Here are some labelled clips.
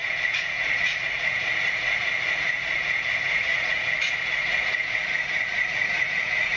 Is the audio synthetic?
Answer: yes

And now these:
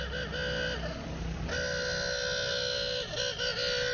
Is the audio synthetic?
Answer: no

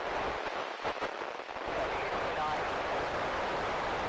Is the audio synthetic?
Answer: no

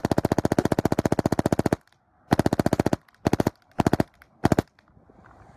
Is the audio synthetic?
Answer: no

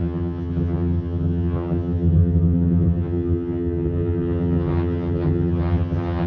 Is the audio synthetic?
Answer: yes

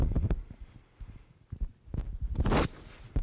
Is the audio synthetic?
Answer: no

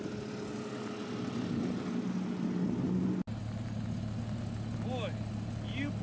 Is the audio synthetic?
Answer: no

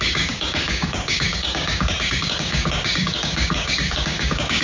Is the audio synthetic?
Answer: yes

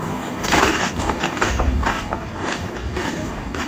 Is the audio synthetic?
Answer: yes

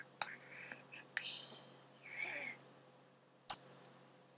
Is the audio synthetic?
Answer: no